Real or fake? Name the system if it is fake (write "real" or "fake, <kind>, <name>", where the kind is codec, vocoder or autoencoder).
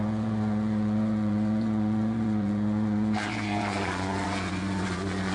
fake, vocoder, Vocos